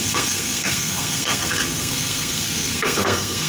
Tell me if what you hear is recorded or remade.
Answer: remade